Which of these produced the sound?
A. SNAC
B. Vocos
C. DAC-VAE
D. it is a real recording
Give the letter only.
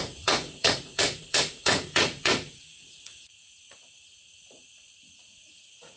B